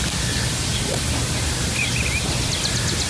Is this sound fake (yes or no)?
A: no